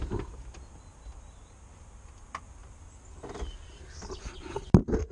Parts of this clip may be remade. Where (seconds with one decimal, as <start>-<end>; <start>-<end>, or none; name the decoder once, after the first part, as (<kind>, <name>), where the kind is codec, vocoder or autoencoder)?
2.6-4.1 (vocoder, BigVGAN v2)